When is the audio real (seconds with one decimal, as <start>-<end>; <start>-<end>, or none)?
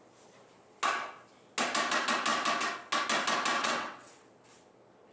0.0-3.6; 4.2-5.1